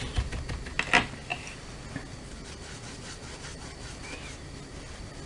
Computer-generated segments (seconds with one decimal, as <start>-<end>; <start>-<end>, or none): none